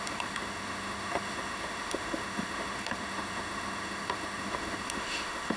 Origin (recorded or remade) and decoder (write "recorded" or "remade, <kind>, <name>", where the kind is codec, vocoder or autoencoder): remade, autoencoder, DAC-VAE